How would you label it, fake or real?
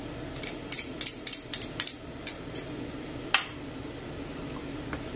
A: real